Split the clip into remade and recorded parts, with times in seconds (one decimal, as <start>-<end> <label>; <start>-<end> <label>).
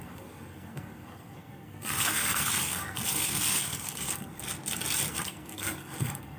0.0-4.4 remade; 4.4-5.1 recorded; 5.1-6.4 remade